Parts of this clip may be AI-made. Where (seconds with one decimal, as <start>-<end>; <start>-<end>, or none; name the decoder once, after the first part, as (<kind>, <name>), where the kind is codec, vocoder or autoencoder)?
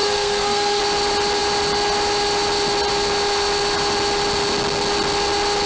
0.0-0.8 (codec, SNAC)